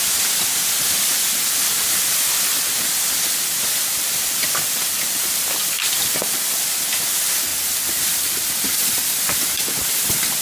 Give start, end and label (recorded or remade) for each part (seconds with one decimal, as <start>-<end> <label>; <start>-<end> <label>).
0.0-10.4 recorded

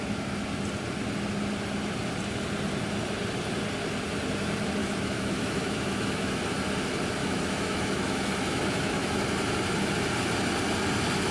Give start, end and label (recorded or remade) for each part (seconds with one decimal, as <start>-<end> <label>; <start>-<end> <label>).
0.0-4.8 recorded; 4.8-6.4 remade; 6.4-7.2 recorded; 7.2-9.2 remade; 9.2-11.3 recorded

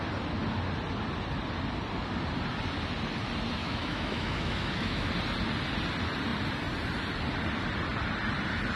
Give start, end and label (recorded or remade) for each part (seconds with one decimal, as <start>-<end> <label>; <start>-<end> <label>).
0.0-3.6 recorded; 3.6-5.1 remade; 5.1-8.8 recorded

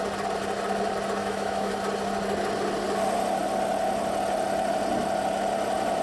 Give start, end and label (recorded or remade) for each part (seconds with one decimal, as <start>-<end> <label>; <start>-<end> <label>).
0.0-1.2 recorded; 1.2-1.7 remade; 1.7-6.0 recorded

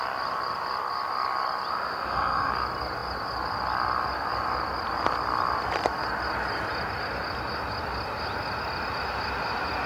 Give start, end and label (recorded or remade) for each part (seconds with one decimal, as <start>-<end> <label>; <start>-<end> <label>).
0.0-1.7 recorded; 1.7-2.5 remade; 2.5-9.9 recorded

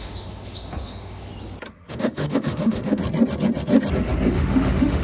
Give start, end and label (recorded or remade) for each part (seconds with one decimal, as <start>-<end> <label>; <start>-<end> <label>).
0.0-1.3 remade; 1.3-1.9 recorded; 1.9-3.0 remade; 3.0-4.3 recorded; 4.3-5.0 remade

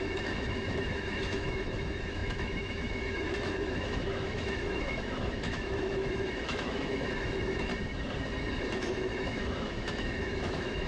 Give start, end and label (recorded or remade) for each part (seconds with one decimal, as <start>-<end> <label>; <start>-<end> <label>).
0.0-7.7 remade; 7.7-8.7 recorded; 8.7-10.9 remade